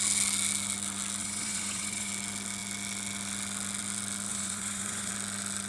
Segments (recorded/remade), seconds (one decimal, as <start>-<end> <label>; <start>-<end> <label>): 0.0-1.2 recorded; 1.2-2.1 remade; 2.1-4.3 recorded; 4.3-5.1 remade; 5.1-5.7 recorded